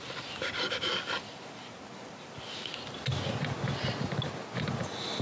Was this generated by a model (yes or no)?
no